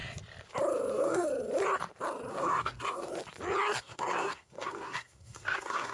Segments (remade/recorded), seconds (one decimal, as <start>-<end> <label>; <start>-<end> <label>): 0.0-0.9 recorded; 0.9-1.3 remade; 1.3-2.3 recorded; 2.3-3.1 remade; 3.1-3.8 recorded; 3.8-5.9 remade